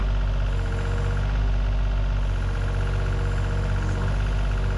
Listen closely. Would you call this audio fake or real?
real